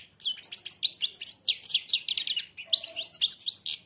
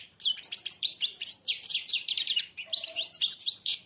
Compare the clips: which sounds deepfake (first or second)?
second